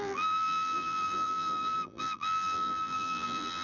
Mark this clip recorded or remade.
remade